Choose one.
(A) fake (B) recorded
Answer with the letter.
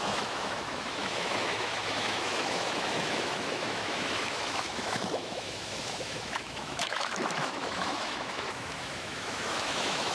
A